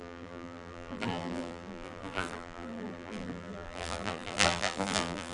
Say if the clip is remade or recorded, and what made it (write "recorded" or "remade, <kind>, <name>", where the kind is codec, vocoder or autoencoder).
remade, vocoder, BigVGAN v2